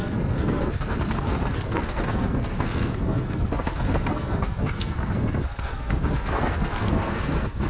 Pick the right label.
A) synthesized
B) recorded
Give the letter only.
A